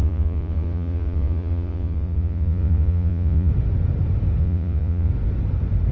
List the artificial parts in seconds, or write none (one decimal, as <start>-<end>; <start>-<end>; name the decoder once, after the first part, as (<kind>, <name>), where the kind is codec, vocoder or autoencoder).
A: 0.0-3.5 (vocoder, Vocos); 4.4-5.1

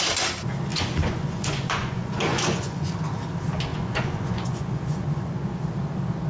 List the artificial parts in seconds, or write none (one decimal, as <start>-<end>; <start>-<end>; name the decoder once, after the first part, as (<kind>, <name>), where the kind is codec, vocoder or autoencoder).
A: 0.7-2.9 (vocoder, Vocos); 3.7-5.5

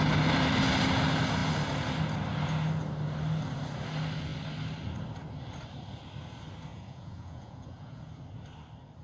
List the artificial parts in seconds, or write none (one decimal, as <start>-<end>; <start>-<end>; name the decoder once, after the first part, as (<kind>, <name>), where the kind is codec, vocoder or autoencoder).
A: 6.7-8.1 (vocoder, Vocos)

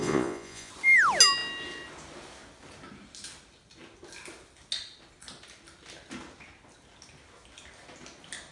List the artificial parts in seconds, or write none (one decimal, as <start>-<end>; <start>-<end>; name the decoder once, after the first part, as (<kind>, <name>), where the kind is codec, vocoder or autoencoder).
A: 0.0-0.7 (vocoder, Vocos)

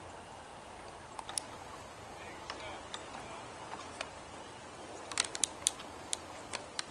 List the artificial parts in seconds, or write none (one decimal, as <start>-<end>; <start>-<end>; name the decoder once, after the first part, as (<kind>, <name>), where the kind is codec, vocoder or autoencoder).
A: none

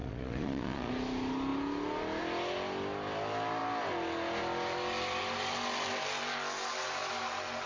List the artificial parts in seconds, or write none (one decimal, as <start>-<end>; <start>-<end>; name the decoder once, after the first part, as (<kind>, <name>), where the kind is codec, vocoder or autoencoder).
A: 0.0-0.9 (vocoder, Vocos)